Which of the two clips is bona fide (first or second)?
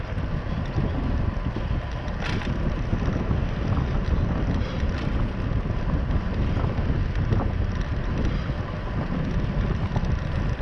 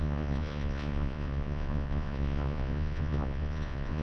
first